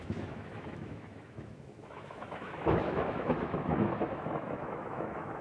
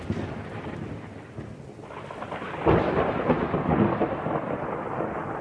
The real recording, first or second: second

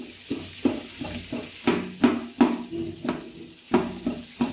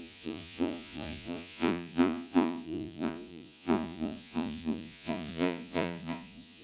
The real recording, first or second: first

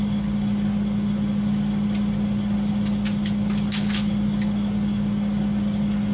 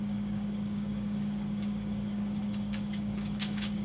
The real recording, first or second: first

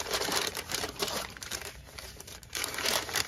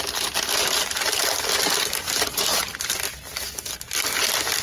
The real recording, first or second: second